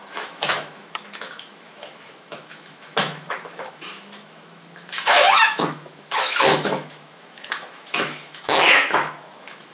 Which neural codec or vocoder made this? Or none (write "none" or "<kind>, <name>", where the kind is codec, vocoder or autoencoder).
autoencoder, DAC-VAE